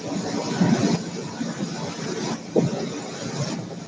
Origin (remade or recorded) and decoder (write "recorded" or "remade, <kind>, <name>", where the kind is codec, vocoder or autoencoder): recorded